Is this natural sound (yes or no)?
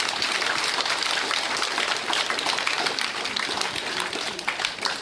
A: no